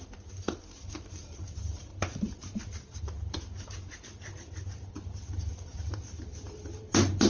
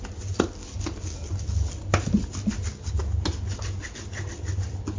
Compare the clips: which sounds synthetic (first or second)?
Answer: first